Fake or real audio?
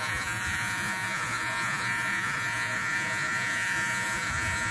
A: fake